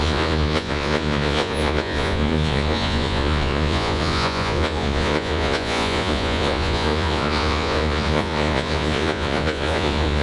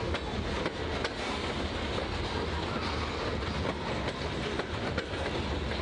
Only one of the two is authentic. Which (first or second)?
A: second